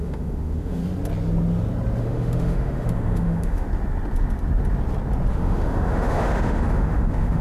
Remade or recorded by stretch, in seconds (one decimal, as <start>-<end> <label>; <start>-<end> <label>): 0.0-0.8 remade; 0.8-2.0 recorded; 2.0-3.7 remade; 3.7-5.3 recorded; 5.3-7.4 remade